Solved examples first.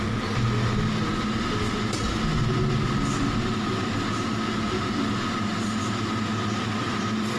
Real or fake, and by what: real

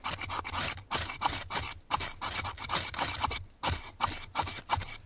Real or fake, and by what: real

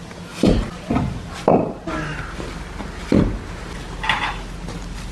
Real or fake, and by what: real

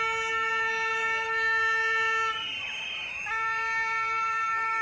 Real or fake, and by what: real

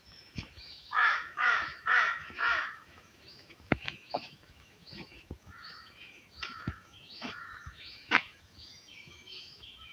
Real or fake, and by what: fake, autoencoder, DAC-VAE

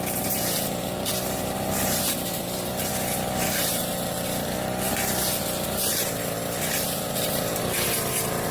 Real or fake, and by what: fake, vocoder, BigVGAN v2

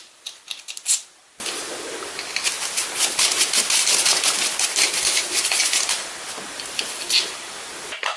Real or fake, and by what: real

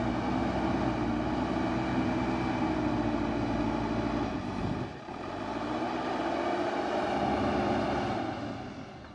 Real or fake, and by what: real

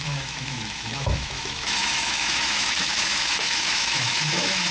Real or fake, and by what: fake, autoencoder, DAC-VAE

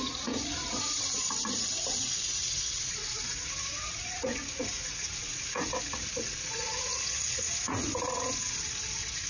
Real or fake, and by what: fake, vocoder, Vocos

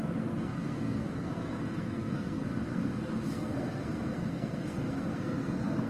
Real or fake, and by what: fake, codec, SNAC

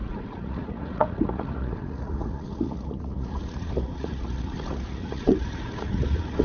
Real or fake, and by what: fake, vocoder, Vocos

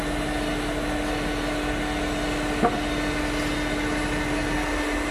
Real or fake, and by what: real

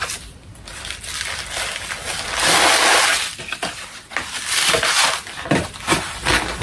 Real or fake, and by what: real